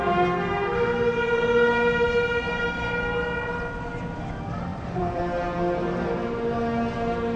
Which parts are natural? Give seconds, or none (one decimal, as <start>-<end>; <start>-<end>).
0.0-4.7; 5.2-7.4